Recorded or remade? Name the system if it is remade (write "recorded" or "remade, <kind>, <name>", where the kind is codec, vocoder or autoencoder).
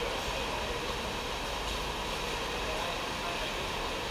recorded